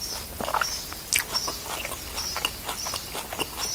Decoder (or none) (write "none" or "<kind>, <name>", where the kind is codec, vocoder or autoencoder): none